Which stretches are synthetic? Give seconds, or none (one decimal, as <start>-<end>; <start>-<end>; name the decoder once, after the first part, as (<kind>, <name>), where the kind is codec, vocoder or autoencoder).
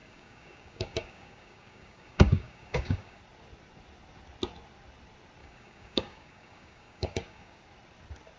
0.0-3.2 (codec, DAC); 5.4-7.6